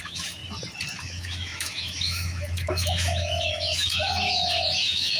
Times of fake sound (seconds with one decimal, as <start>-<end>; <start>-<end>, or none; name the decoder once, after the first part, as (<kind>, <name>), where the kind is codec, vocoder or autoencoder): 0.0-0.4 (autoencoder, DAC-VAE); 1.0-5.2